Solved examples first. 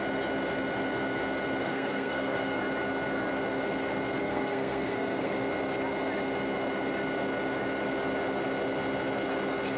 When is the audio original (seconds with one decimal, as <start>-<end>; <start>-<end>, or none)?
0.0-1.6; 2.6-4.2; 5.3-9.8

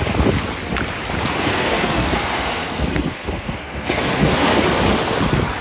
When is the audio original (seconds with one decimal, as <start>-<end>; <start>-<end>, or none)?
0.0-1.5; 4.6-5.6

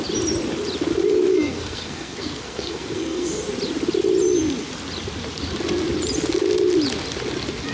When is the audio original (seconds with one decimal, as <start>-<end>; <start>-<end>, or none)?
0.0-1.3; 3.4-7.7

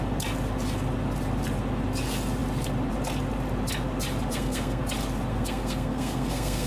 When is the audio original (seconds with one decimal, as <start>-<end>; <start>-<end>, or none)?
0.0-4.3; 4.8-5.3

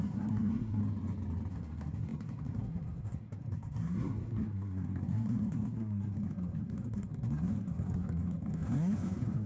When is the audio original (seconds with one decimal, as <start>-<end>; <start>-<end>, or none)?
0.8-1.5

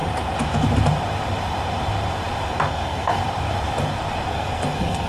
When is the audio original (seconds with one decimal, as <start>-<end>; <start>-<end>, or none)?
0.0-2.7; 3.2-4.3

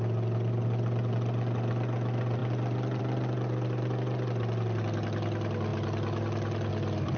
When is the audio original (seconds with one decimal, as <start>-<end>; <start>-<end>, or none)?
0.0-7.2